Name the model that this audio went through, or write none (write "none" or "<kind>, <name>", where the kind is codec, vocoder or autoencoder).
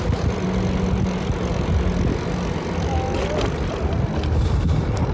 none